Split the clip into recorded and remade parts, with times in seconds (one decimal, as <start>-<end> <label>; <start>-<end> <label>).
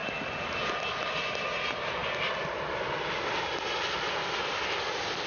0.0-5.3 recorded